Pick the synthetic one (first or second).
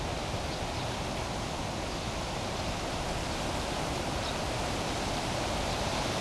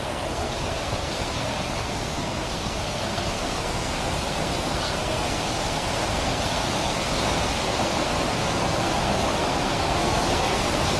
second